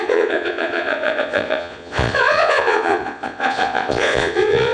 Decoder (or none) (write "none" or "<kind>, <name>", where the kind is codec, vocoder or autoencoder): vocoder, Vocos